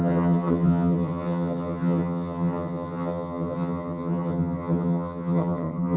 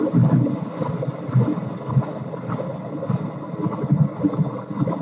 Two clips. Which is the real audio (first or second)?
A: second